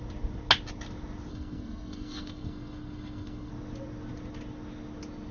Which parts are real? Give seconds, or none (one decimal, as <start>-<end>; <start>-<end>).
0.0-1.3; 3.5-5.3